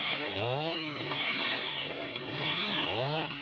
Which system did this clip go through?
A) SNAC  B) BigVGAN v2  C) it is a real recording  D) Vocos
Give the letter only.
A